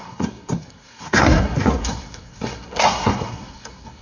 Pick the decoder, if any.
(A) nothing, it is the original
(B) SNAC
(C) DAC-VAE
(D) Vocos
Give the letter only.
B